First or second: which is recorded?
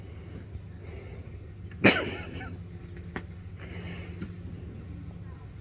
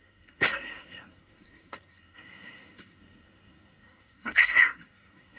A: first